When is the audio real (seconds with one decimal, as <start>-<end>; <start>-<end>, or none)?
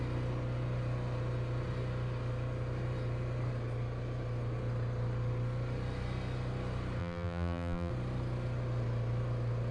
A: 0.0-7.0; 7.9-9.7